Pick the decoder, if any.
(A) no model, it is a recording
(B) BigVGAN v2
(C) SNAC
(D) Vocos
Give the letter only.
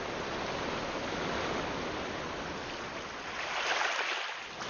A